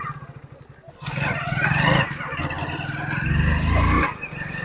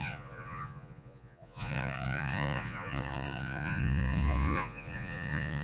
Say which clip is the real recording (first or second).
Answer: first